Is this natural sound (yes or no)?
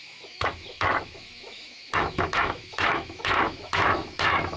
no